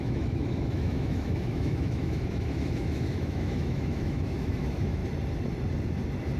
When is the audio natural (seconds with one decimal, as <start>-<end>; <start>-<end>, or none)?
5.0-6.4